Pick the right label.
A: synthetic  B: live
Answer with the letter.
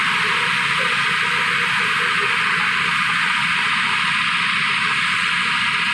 B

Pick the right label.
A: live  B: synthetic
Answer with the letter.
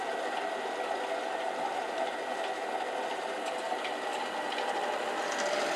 A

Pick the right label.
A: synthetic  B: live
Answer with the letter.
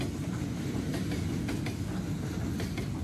B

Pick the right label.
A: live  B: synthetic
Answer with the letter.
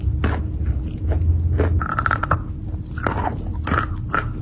A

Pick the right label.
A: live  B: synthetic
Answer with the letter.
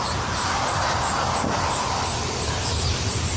B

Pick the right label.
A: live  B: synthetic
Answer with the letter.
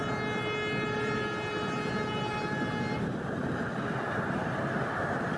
A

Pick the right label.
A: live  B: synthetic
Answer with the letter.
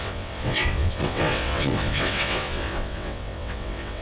B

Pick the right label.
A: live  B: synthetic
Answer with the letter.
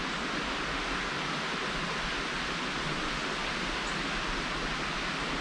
A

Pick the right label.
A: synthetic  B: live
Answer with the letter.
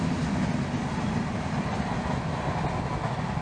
B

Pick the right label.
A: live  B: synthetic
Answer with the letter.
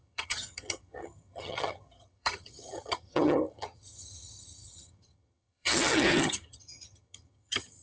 B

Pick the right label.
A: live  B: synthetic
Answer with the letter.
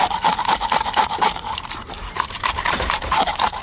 B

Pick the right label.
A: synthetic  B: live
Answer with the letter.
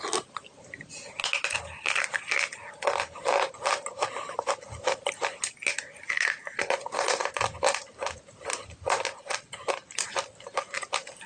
B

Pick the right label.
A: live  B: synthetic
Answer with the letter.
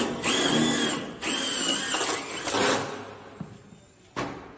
A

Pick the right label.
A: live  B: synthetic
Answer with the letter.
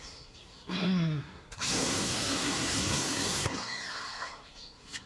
B